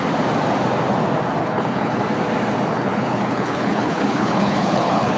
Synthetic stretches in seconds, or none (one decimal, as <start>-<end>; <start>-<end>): 1.4-2.0; 2.7-5.2